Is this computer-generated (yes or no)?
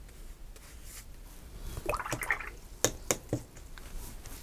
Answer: no